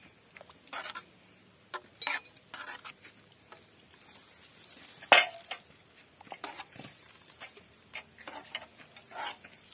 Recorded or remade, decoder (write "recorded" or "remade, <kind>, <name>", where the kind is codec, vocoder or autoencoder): recorded